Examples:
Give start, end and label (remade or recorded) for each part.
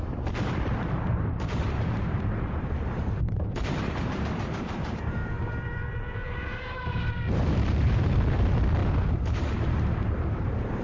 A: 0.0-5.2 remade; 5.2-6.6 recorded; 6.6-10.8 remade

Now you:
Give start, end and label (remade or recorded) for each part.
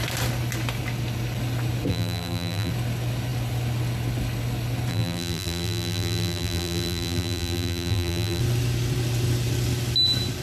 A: 0.0-1.9 recorded; 1.9-2.7 remade; 2.7-4.9 recorded; 4.9-8.4 remade; 8.4-10.4 recorded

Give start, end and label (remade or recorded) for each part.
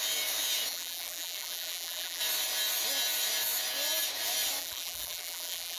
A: 0.0-0.7 recorded; 0.7-2.2 remade; 2.2-4.6 recorded; 4.6-5.8 remade